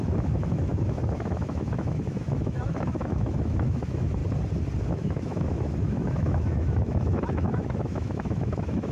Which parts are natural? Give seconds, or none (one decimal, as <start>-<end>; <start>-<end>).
4.2-4.9